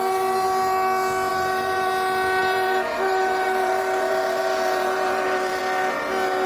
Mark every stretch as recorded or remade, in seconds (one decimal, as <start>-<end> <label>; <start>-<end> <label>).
0.0-1.3 recorded; 1.3-1.9 remade; 1.9-2.4 recorded; 2.4-5.6 remade; 5.6-6.5 recorded